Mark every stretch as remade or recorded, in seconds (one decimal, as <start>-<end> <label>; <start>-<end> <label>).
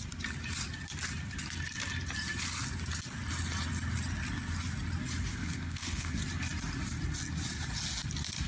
0.0-5.3 recorded; 5.3-6.2 remade; 6.2-8.5 recorded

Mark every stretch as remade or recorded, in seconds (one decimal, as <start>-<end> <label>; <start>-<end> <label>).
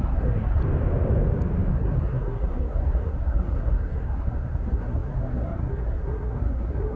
0.0-0.6 remade; 0.6-1.7 recorded; 1.7-7.0 remade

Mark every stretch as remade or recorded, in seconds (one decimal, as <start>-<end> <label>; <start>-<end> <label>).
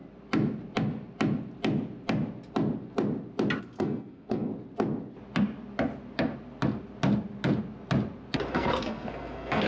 0.0-3.6 recorded; 3.6-4.5 remade; 4.5-8.5 recorded; 8.5-9.7 remade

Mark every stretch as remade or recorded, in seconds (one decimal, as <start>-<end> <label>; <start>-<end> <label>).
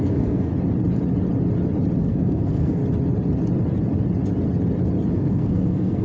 0.0-0.5 remade; 0.5-2.0 recorded; 2.0-2.8 remade; 2.8-5.1 recorded; 5.1-6.0 remade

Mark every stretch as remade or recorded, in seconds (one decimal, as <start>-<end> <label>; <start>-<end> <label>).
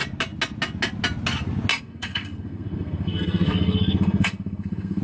0.0-1.7 recorded; 1.7-5.0 remade